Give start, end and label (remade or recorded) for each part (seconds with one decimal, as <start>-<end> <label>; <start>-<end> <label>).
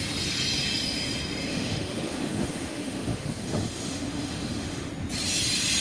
0.0-1.5 recorded; 1.5-4.9 remade; 4.9-5.8 recorded